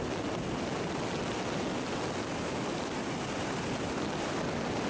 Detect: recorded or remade recorded